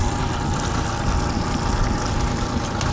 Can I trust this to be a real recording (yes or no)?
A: yes